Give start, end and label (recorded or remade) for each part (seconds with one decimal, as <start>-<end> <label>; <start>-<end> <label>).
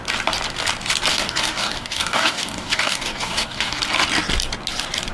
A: 0.0-1.1 recorded; 1.1-3.8 remade; 3.8-5.1 recorded